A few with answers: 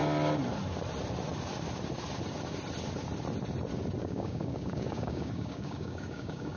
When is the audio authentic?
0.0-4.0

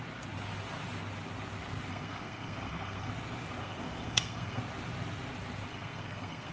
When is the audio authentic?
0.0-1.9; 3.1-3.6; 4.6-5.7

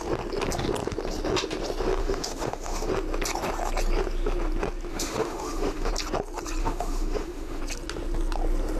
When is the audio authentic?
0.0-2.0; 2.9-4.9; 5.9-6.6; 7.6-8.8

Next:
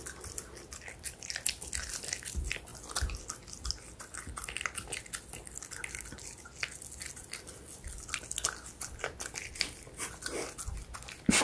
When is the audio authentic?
0.0-11.4

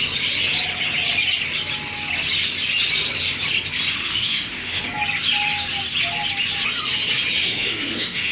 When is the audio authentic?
0.0-4.0; 4.8-7.4

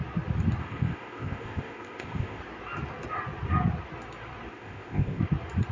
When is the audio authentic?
0.0-0.6; 2.4-4.5; 5.2-5.7